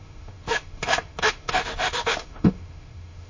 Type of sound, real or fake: fake